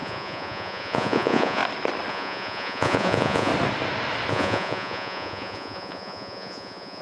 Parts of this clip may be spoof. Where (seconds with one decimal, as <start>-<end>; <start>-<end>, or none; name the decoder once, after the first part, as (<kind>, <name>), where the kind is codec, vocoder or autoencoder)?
0.0-1.6 (vocoder, Vocos); 2.1-3.5; 4.3-7.0